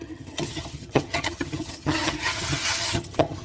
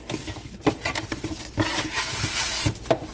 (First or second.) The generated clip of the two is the first